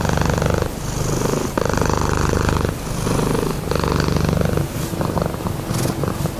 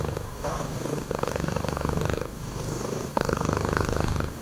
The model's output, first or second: second